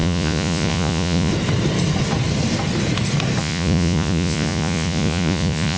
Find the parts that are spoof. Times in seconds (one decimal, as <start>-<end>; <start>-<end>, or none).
0.0-1.3; 3.4-5.8